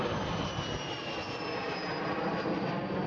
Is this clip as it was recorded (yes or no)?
yes